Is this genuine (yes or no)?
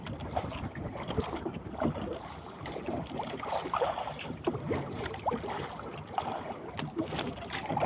no